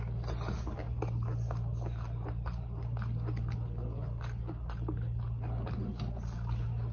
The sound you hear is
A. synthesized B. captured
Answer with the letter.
B